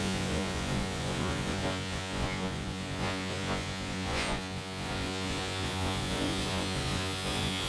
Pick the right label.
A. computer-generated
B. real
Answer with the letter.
A